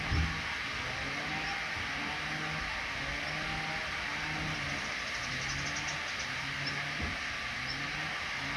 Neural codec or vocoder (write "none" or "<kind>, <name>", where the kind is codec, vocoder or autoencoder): none